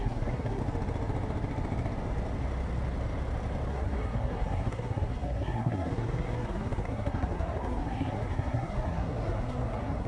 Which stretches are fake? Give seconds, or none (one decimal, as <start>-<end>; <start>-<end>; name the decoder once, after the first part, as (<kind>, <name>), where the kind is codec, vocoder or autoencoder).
0.0-0.6 (codec, SNAC); 3.7-10.1